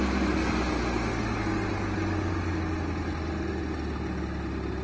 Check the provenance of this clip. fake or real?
real